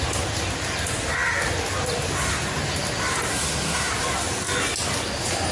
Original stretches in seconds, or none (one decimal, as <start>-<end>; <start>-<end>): 0.0-3.3; 3.9-5.5